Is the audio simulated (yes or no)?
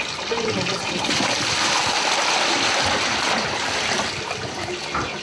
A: no